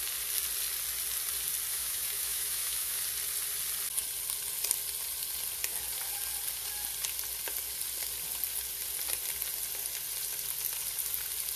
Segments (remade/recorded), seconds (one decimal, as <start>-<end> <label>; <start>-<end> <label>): 0.0-1.7 recorded; 1.7-3.0 remade; 3.0-11.6 recorded